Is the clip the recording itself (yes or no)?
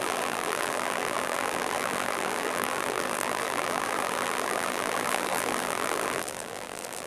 no